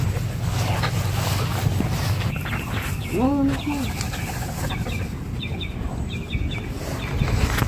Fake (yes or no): no